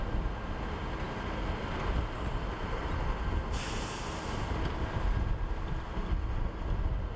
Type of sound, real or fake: real